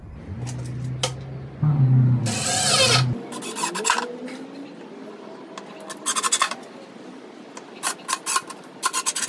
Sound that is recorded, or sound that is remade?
recorded